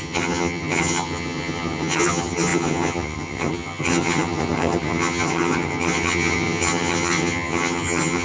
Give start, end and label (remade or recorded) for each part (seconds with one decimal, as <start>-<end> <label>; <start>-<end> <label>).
0.0-8.2 remade